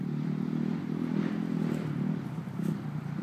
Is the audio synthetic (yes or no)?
no